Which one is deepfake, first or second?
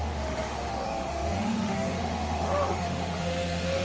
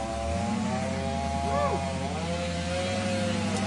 first